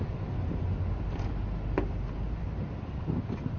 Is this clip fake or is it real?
real